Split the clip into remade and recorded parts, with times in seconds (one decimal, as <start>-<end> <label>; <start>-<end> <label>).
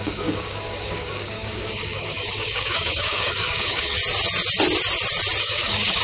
0.0-4.0 remade; 4.0-5.4 recorded; 5.4-6.0 remade